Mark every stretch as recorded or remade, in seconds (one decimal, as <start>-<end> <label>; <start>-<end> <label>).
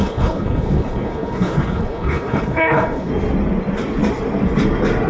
0.0-3.1 remade; 3.1-5.1 recorded